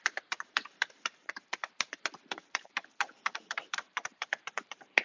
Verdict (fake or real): fake